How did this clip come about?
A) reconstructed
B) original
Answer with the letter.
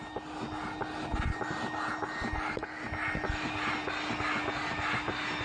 B